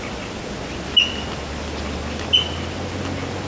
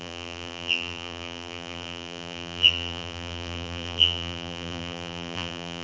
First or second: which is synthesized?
second